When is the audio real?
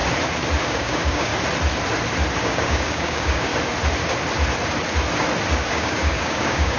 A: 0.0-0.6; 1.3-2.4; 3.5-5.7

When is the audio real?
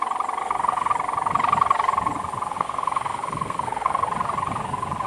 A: 0.0-0.4; 0.9-2.5; 4.0-5.1